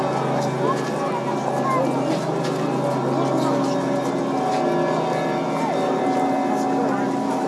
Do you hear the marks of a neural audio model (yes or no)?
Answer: no